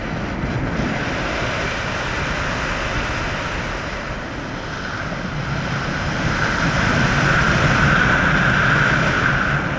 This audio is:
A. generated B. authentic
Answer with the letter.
B